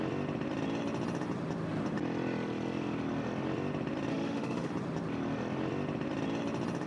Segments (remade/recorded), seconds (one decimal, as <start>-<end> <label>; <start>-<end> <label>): 0.0-4.1 recorded; 4.1-4.7 remade; 4.7-6.9 recorded